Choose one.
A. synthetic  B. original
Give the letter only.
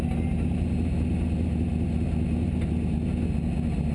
B